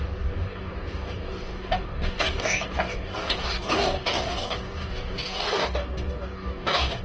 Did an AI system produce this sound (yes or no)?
yes